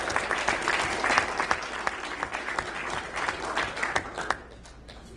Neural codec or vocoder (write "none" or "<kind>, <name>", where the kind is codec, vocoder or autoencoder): none